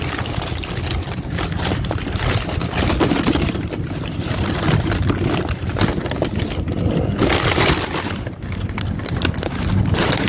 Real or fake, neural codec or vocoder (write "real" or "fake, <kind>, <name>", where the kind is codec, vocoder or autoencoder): fake, vocoder, BigVGAN v2